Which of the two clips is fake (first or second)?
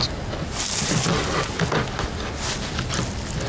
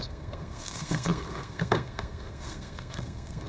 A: second